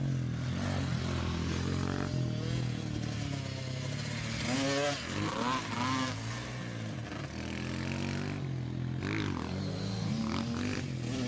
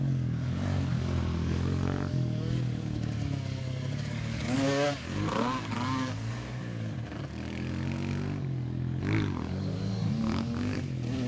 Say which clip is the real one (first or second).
first